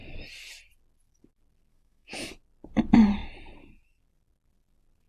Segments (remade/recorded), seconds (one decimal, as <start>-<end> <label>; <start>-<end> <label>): 0.0-1.7 recorded; 1.7-2.3 remade; 2.3-5.1 recorded